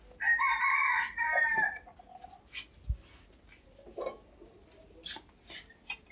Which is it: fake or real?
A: real